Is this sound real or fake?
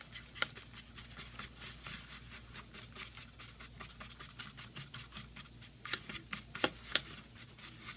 real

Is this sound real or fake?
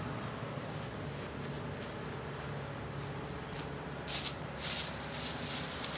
real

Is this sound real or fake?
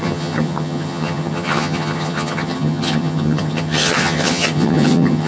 fake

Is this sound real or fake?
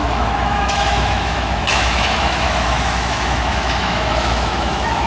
fake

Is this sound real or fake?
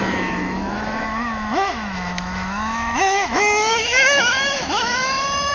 fake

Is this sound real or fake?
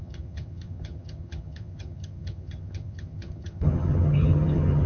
fake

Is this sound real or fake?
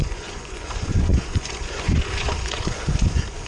fake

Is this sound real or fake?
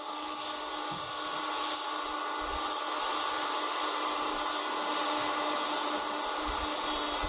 real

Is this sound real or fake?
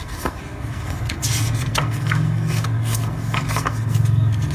fake